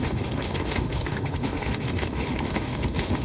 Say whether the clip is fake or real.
fake